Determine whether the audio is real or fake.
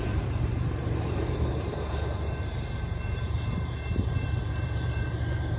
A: fake